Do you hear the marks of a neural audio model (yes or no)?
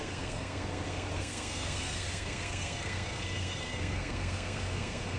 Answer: yes